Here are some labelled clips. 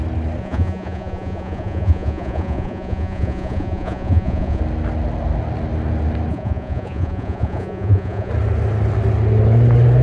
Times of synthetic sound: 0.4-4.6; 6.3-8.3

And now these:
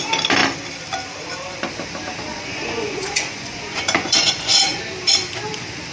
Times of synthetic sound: 2.3-4.8

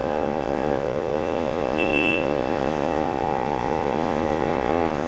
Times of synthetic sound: 0.0-5.1

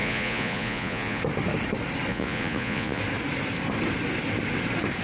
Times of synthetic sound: 0.0-1.2; 2.1-3.0

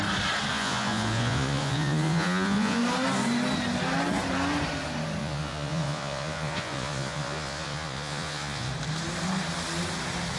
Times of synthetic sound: 0.5-2.8; 5.2-8.7

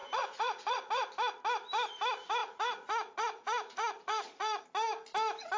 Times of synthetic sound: 0.0-0.9; 2.4-4.6